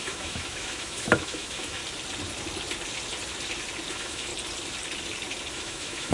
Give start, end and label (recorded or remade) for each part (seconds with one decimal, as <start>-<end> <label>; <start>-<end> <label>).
0.0-1.8 remade; 1.8-3.9 recorded; 3.9-4.3 remade; 4.3-5.5 recorded; 5.5-6.1 remade